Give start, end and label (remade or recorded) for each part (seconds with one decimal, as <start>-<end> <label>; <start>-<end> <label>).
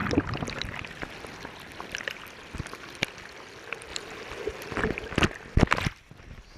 0.0-3.9 recorded; 3.9-4.8 remade; 4.8-6.6 recorded